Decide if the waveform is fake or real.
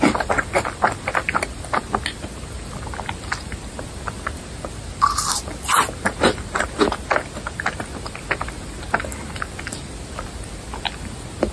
real